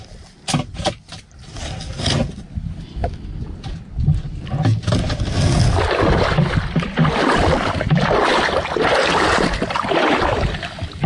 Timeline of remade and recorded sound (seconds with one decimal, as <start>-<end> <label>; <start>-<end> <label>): 0.0-11.1 recorded